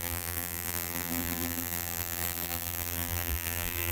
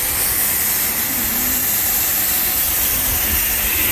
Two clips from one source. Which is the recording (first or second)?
second